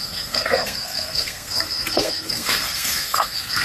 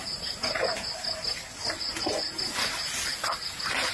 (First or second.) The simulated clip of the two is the first